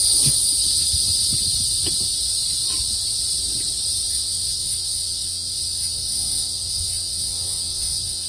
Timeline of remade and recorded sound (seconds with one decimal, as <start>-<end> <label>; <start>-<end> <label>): 0.0-4.1 recorded; 4.1-8.3 remade